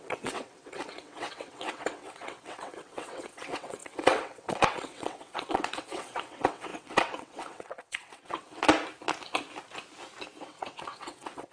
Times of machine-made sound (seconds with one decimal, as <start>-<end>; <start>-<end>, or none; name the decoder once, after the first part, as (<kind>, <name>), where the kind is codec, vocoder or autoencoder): 0.0-8.6 (vocoder, WaveNeXt); 10.4-11.5